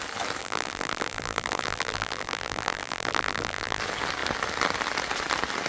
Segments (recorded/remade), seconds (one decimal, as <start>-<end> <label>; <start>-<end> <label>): 0.0-0.4 recorded; 0.4-3.8 remade; 3.8-5.7 recorded